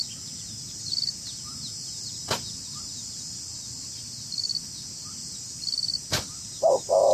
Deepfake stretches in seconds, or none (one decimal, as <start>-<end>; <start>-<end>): none